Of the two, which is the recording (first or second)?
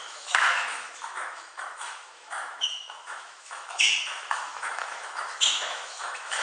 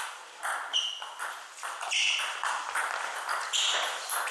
second